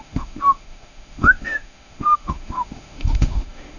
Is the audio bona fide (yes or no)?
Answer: no